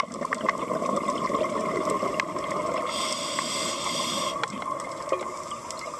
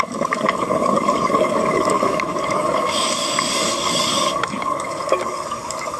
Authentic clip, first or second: first